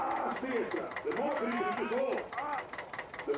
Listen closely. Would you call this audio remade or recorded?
recorded